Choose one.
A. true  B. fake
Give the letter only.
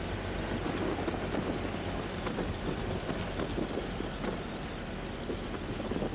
A